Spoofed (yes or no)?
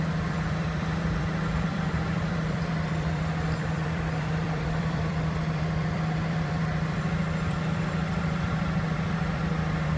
yes